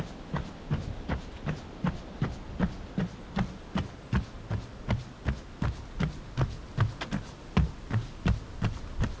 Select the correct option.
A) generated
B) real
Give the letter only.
B